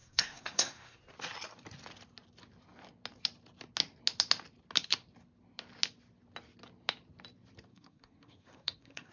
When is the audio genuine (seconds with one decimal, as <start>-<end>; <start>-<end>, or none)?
1.0-7.7